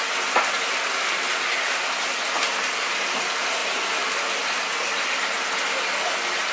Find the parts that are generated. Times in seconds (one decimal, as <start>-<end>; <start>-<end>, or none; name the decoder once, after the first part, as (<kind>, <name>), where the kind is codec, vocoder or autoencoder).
none